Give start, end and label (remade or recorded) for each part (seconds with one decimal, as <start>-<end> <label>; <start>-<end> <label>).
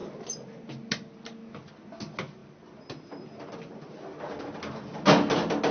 0.0-5.7 recorded